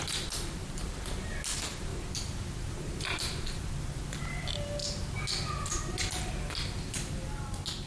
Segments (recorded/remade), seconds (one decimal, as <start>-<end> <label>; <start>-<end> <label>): 0.0-7.9 recorded